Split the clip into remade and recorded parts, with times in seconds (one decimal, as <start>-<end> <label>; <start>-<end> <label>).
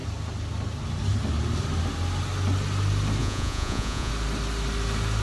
0.0-3.2 recorded; 3.2-4.1 remade; 4.1-5.2 recorded